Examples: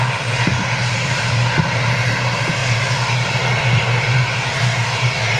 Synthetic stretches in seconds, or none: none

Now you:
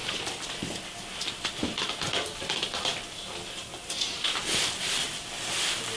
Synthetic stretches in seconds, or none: none

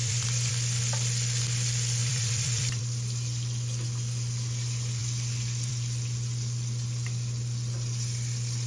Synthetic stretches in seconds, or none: 0.0-0.5 (vocoder, BigVGAN v2); 2.0-2.8

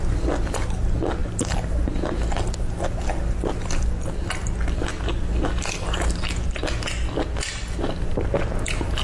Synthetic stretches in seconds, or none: 1.2-1.7 (vocoder, BigVGAN v2)

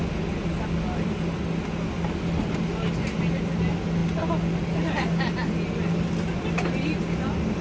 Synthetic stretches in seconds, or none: none

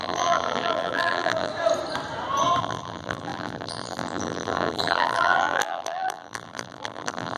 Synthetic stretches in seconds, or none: 0.0-1.5 (vocoder, BigVGAN v2); 2.6-7.4

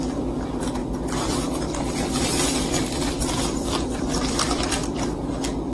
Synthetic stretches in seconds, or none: 0.8-4.2 (vocoder, BigVGAN v2)

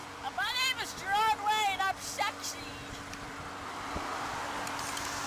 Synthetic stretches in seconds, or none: 0.0-0.5 (vocoder, BigVGAN v2); 2.7-4.4